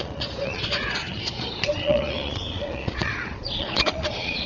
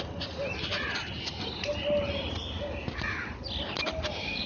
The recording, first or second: second